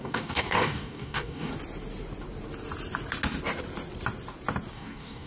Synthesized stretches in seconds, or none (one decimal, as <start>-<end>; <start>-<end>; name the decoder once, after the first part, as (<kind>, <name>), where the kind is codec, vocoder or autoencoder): 0.0-1.5 (codec, DAC); 4.7-5.3